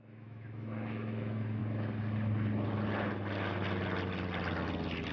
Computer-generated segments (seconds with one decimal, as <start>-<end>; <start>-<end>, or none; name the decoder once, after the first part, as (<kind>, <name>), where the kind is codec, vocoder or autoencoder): 0.0-1.6 (autoencoder, DAC-VAE)